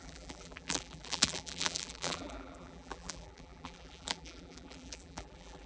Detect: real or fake fake